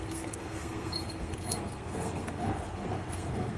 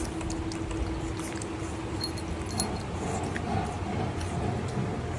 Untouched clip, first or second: second